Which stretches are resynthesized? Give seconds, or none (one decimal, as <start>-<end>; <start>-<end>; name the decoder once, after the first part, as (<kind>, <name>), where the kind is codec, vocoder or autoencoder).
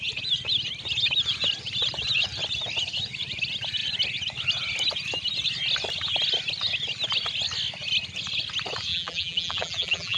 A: 8.9-10.2 (vocoder, BigVGAN v2)